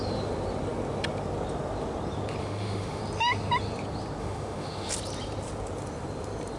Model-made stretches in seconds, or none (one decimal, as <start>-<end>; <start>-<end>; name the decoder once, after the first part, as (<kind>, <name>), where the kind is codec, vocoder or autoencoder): 2.4-3.0 (autoencoder, DAC-VAE); 4.2-4.9